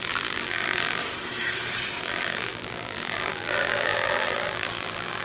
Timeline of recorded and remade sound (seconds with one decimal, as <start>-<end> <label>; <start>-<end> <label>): 0.0-1.0 remade; 1.0-2.0 recorded; 2.0-5.2 remade